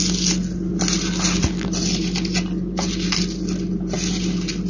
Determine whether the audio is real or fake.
real